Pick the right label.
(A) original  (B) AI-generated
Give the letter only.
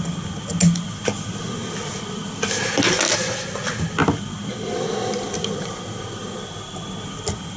A